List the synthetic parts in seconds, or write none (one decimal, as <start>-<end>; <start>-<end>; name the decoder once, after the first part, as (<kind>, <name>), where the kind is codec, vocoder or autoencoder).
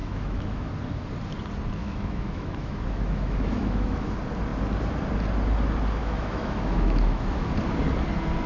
0.0-0.7 (autoencoder, DAC-VAE); 1.8-4.1; 6.0-7.5